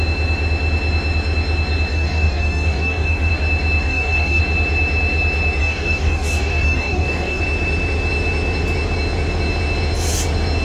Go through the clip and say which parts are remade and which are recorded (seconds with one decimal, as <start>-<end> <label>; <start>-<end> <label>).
0.0-1.9 recorded; 1.9-3.3 remade; 3.3-3.8 recorded; 3.8-4.4 remade; 4.4-5.6 recorded; 5.6-7.4 remade; 7.4-10.6 recorded